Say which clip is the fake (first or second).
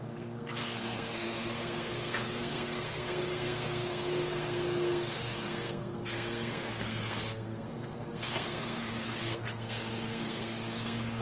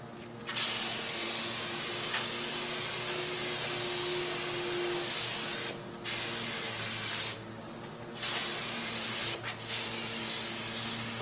first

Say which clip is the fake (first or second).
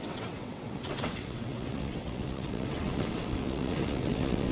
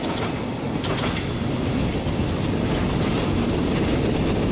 first